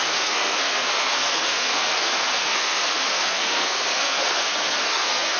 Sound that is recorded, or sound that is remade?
remade